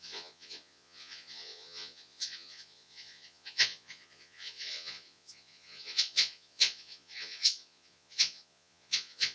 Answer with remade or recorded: remade